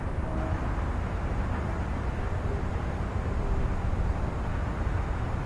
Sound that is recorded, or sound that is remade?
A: recorded